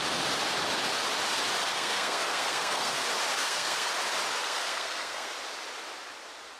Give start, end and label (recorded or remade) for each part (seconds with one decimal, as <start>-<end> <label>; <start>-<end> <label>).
0.0-1.7 recorded; 1.7-3.0 remade; 3.0-3.4 recorded; 3.4-3.9 remade; 3.9-4.4 recorded; 4.4-5.3 remade; 5.3-6.6 recorded